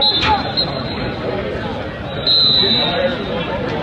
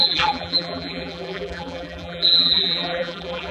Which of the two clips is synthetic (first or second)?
second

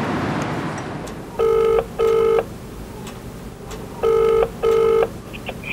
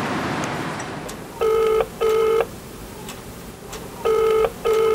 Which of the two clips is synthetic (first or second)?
second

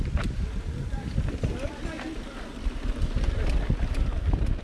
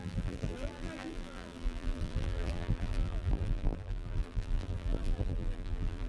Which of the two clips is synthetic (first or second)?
second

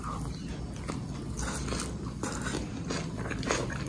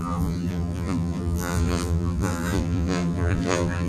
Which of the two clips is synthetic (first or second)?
second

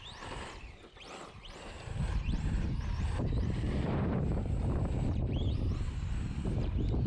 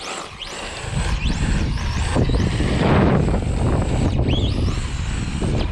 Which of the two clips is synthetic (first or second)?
first